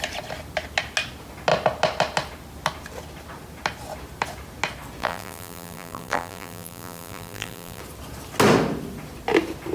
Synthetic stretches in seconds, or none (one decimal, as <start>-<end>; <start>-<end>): 5.0-7.8